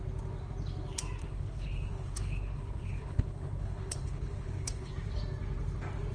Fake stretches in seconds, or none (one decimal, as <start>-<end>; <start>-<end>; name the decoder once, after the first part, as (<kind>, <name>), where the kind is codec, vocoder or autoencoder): 1.2-4.9 (codec, HILCodec)